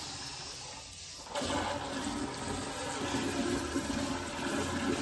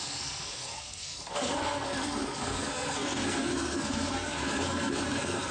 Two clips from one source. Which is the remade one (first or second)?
second